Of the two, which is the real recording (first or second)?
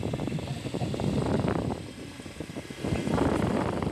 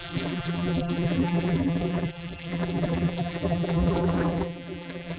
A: first